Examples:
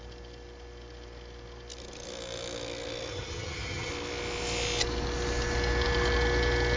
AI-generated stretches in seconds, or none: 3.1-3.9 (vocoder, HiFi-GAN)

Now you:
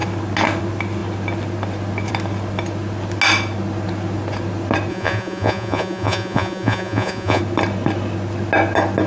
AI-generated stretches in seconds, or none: 4.9-7.4 (vocoder, Vocos)

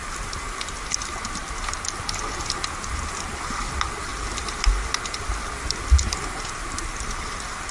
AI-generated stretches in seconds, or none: none

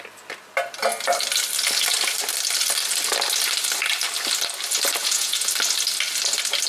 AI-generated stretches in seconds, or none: 5.0-5.5 (vocoder, Vocos)